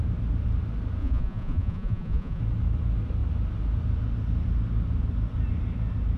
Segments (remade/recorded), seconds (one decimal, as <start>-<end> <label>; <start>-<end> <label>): 0.0-1.0 recorded; 1.0-2.4 remade; 2.4-6.2 recorded